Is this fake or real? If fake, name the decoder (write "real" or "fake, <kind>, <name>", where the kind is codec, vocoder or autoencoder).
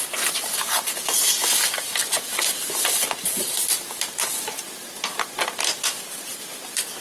real